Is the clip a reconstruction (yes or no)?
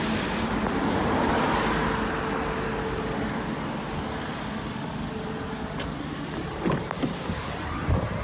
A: no